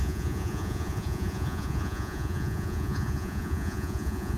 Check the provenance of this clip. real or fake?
fake